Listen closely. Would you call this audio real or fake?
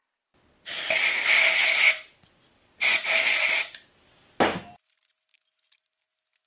real